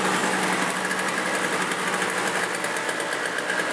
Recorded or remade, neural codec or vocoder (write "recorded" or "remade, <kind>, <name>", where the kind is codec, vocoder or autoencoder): recorded